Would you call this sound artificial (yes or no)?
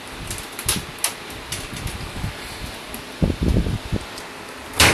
no